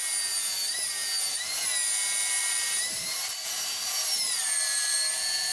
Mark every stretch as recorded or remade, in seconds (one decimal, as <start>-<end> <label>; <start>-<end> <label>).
0.0-2.4 recorded; 2.4-3.2 remade; 3.2-4.4 recorded; 4.4-5.5 remade